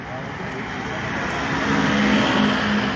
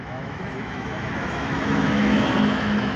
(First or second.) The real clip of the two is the first